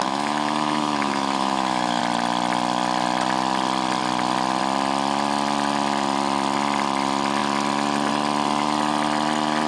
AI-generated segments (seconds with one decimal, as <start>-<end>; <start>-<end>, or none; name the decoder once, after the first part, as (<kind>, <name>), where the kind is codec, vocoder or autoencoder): 0.0-2.0 (autoencoder, DAC-VAE)